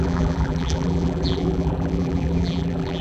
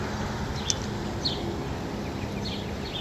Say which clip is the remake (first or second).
first